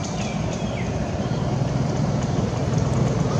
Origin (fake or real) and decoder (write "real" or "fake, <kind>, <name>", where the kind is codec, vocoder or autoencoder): fake, vocoder, BigVGAN v2